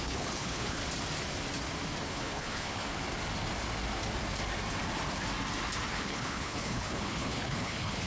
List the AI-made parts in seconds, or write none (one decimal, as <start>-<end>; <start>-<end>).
0.0-0.8; 2.1-2.9; 5.9-8.1